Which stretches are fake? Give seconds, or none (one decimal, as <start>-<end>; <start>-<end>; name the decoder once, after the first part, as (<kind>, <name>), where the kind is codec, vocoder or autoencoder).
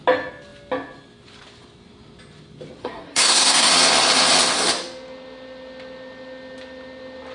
2.8-3.7 (codec, SNAC)